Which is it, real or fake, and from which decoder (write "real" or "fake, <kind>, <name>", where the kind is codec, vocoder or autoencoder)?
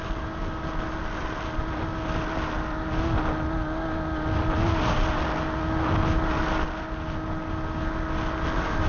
real